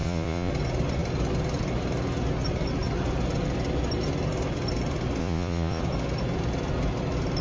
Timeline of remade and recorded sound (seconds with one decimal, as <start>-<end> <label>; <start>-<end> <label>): 0.0-0.5 remade; 0.5-5.2 recorded; 5.2-5.8 remade; 5.8-7.4 recorded